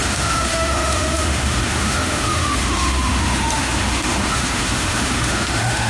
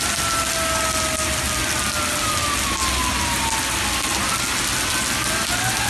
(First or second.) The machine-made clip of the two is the first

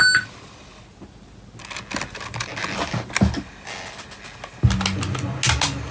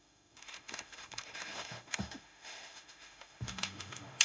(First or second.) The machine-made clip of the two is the second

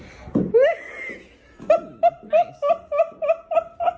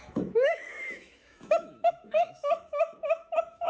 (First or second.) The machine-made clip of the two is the second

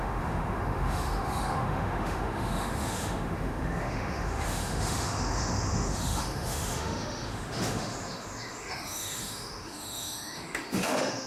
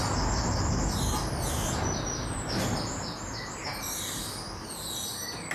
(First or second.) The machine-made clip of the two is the first